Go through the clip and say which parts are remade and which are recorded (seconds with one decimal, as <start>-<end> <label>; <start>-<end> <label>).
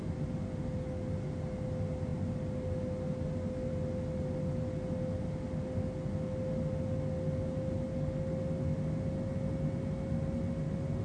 0.0-11.0 recorded